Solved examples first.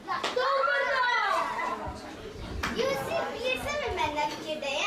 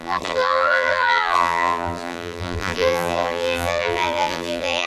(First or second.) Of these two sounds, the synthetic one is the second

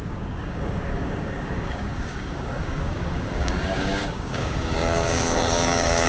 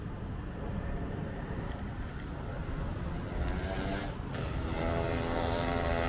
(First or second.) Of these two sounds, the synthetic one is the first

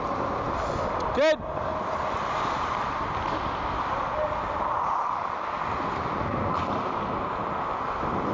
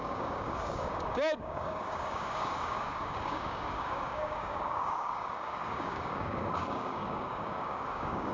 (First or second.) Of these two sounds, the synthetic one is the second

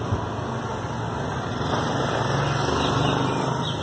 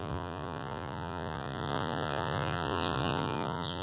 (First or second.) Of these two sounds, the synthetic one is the second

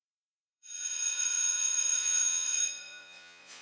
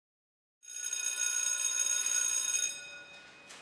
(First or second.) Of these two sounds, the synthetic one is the first